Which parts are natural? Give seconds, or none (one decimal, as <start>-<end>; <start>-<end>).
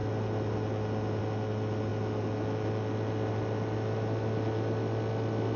0.0-5.6